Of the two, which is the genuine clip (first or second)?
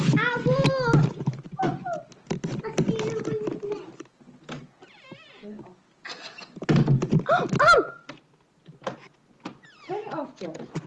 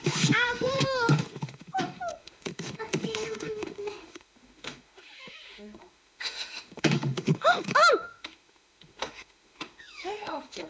first